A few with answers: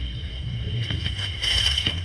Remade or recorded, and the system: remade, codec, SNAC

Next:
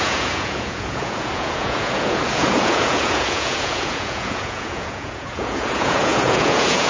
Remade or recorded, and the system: remade, vocoder, Vocos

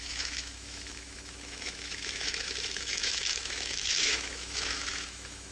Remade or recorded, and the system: remade, autoencoder, DAC-VAE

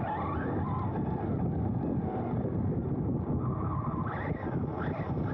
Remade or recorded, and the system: recorded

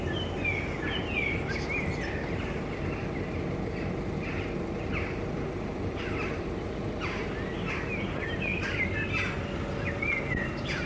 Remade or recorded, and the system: recorded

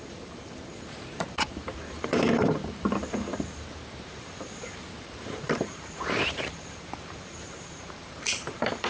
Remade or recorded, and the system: remade, vocoder, BigVGAN v2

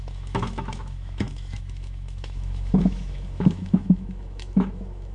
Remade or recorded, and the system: remade, autoencoder, DAC-VAE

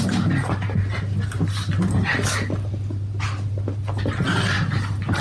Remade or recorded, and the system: recorded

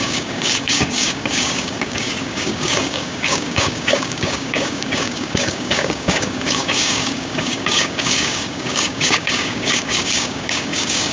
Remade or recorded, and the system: remade, codec, DAC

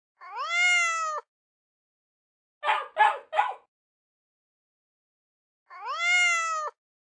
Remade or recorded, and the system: recorded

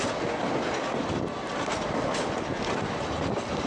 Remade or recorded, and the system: recorded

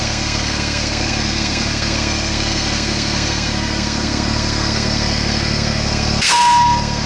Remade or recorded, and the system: remade, codec, SNAC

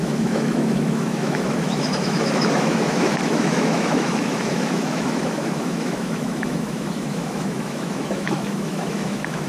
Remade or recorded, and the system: remade, autoencoder, DAC-VAE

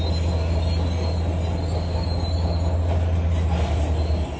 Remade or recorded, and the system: recorded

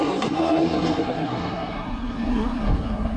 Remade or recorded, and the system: remade, codec, SNAC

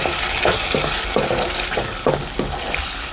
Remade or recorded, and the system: recorded